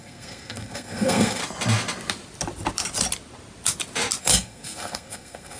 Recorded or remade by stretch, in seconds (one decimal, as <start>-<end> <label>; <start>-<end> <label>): 0.0-1.4 remade; 1.4-4.2 recorded; 4.2-5.6 remade